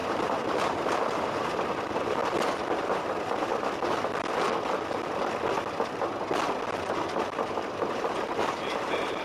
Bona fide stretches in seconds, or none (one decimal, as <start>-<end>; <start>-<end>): 2.2-2.8; 3.5-7.2